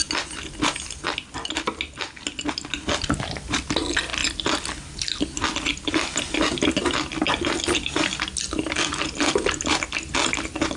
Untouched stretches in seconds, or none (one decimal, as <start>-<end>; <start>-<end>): 0.0-10.8